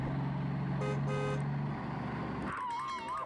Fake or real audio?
real